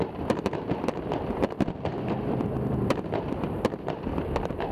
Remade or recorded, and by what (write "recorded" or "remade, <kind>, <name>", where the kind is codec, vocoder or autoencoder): remade, vocoder, BigVGAN v2